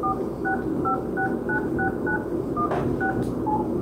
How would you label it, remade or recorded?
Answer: recorded